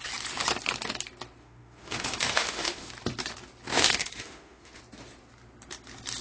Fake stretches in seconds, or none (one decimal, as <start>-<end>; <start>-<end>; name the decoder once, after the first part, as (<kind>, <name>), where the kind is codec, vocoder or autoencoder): 1.4-2.9 (autoencoder, DAC-VAE); 3.7-4.8

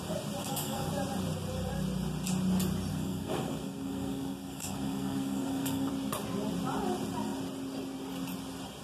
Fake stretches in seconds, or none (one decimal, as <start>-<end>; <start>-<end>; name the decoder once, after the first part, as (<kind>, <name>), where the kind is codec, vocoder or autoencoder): 0.4-0.9 (codec, SNAC); 2.9-5.9